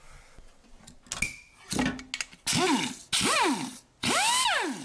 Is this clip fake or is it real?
real